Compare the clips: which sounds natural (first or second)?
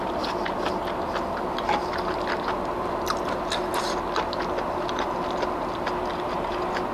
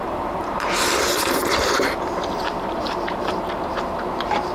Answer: first